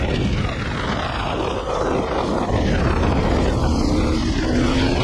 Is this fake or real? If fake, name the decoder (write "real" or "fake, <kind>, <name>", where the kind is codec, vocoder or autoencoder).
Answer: real